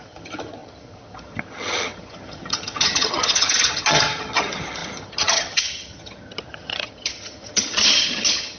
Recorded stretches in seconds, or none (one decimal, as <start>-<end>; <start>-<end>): none